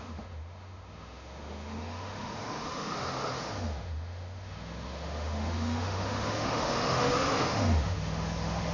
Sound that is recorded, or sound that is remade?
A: remade